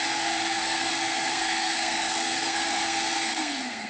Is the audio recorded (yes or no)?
no